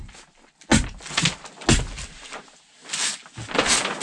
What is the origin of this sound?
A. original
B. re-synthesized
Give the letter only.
A